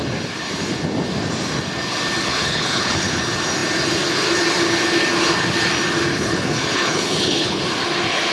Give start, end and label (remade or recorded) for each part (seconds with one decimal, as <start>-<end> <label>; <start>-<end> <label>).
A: 0.0-2.3 recorded; 2.3-3.2 remade; 3.2-6.1 recorded; 6.1-7.6 remade; 7.6-8.3 recorded